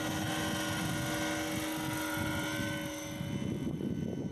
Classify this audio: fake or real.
real